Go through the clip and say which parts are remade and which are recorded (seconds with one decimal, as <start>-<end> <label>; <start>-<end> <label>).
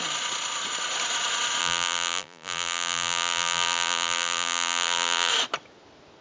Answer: 0.0-1.6 recorded; 1.6-5.3 remade; 5.3-6.2 recorded